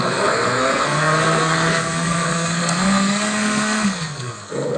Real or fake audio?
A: fake